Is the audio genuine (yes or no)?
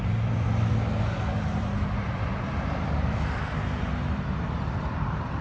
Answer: no